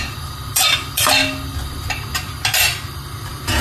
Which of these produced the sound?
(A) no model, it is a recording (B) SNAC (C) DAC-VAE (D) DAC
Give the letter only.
A